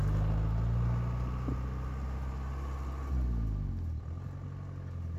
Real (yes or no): yes